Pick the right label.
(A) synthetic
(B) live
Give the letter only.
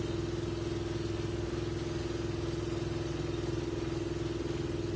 B